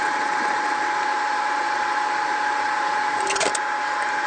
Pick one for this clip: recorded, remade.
recorded